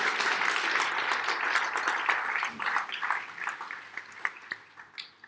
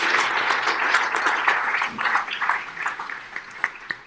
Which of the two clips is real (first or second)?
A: first